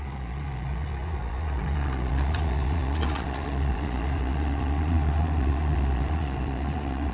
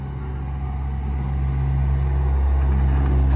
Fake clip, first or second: first